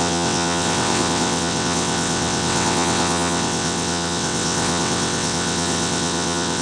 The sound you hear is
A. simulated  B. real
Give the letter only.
A